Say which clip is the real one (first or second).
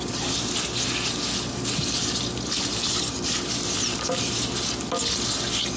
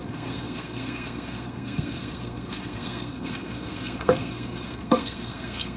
first